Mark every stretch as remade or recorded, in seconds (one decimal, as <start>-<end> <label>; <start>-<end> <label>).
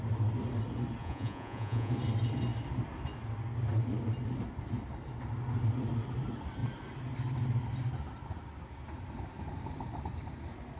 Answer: 0.0-1.0 recorded; 1.0-1.9 remade; 1.9-10.8 recorded